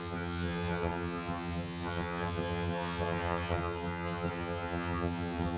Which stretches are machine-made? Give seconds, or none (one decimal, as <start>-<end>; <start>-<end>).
0.0-5.6